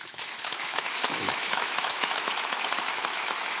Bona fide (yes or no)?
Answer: no